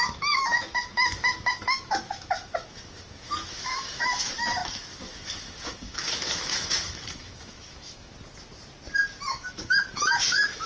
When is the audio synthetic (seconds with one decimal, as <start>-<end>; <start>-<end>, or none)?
0.0-8.1; 9.3-10.7